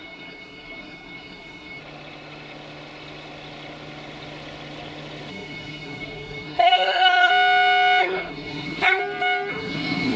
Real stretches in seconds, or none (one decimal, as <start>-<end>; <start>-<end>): 1.8-5.3; 7.3-8.0; 9.0-9.5

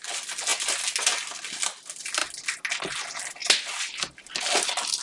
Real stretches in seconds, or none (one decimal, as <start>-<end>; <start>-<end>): 0.0-5.0